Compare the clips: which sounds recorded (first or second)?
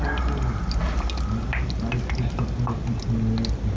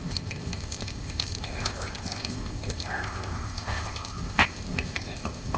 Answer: first